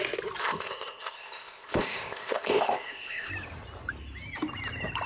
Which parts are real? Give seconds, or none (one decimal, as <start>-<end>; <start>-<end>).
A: 0.0-0.4; 3.3-5.1